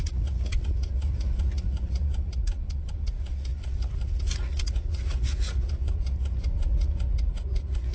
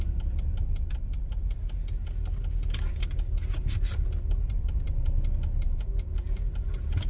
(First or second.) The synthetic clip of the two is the first